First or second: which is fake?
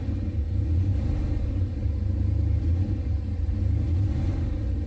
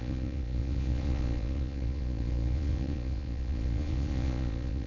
second